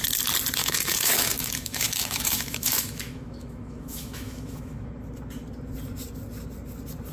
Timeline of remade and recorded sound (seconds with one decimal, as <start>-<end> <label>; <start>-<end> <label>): 0.0-0.6 recorded; 0.6-4.9 remade; 4.9-7.1 recorded